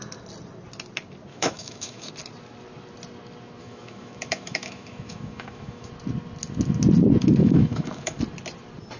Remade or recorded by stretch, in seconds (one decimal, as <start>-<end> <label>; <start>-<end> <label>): 0.0-1.3 recorded; 1.3-2.1 remade; 2.1-3.6 recorded; 3.6-5.9 remade; 5.9-7.4 recorded; 7.4-8.2 remade; 8.2-9.0 recorded